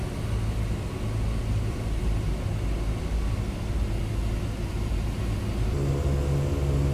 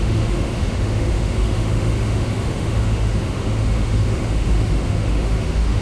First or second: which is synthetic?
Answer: second